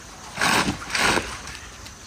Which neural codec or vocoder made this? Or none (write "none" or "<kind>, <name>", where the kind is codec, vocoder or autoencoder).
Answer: none